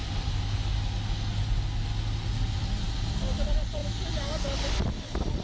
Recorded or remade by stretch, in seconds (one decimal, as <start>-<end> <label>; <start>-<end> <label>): 0.0-5.4 recorded